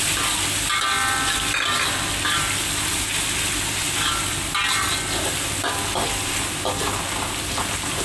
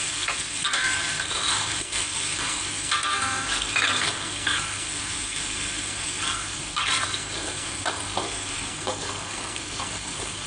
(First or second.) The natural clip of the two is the first